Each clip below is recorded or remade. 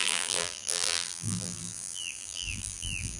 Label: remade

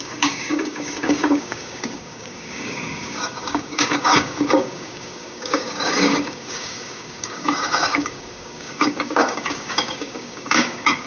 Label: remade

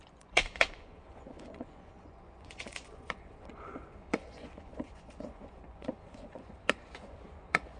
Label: remade